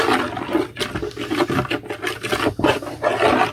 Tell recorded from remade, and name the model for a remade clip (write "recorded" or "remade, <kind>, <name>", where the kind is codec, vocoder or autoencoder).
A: recorded